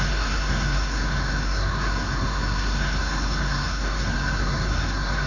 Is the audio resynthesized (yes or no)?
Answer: yes